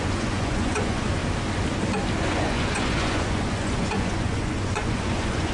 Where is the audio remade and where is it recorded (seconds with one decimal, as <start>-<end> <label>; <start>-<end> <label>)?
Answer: 0.0-1.2 remade; 1.2-2.2 recorded; 2.2-5.5 remade